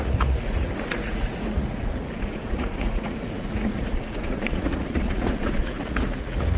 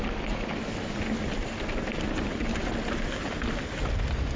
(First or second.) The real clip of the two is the second